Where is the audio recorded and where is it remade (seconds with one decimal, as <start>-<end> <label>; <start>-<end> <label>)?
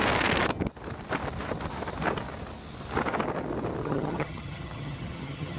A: 0.0-3.8 recorded; 3.8-5.6 remade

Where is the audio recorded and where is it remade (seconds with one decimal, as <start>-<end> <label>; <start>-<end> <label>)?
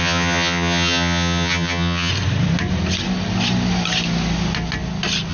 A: 0.0-2.1 remade; 2.1-5.3 recorded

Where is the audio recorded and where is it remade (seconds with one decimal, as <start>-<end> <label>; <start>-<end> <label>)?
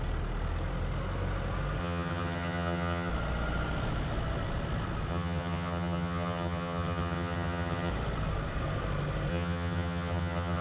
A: 0.0-1.8 recorded; 1.8-3.1 remade; 3.1-5.1 recorded; 5.1-7.9 remade; 7.9-9.3 recorded; 9.3-10.6 remade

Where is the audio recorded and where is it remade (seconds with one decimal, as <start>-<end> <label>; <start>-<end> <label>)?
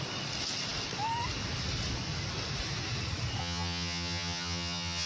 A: 0.0-3.4 recorded; 3.4-5.1 remade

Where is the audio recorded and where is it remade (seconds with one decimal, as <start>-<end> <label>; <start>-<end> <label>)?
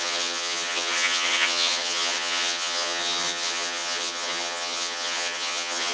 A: 0.0-5.9 remade